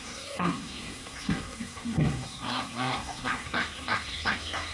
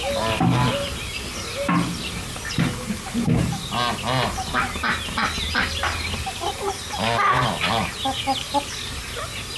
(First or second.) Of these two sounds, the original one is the second